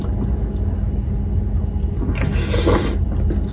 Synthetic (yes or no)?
no